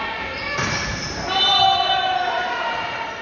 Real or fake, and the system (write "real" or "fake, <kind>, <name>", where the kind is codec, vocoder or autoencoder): real